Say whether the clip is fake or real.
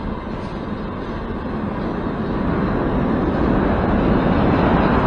real